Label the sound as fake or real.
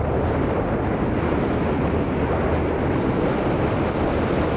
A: real